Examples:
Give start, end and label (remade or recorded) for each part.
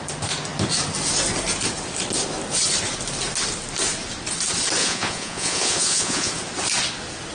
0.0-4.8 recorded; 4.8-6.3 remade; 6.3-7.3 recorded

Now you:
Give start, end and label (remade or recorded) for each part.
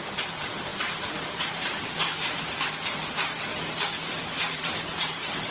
0.0-5.5 remade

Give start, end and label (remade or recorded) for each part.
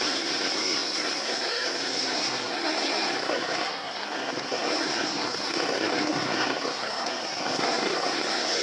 0.0-8.6 remade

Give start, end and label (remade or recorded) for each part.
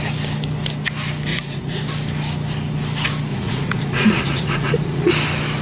0.0-1.3 recorded; 1.3-1.8 remade; 1.8-3.3 recorded; 3.3-5.1 remade; 5.1-5.6 recorded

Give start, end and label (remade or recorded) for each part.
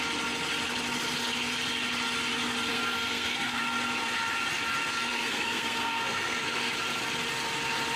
0.0-2.7 recorded; 2.7-3.6 remade; 3.6-4.8 recorded; 4.8-6.7 remade; 6.7-8.0 recorded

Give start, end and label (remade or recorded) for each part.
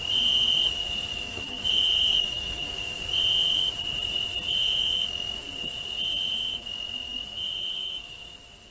0.0-1.1 recorded; 1.1-3.0 remade; 3.0-4.6 recorded; 4.6-5.4 remade; 5.4-6.5 recorded; 6.5-8.2 remade; 8.2-8.7 recorded